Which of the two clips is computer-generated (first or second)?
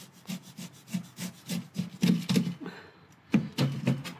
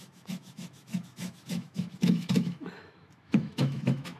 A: second